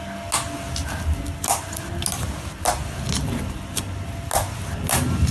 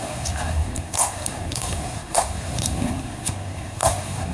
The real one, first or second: first